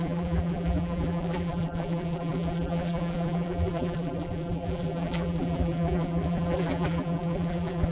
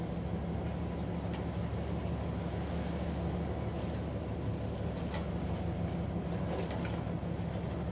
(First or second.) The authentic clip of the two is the second